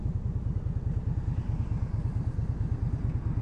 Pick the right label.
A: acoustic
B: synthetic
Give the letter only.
A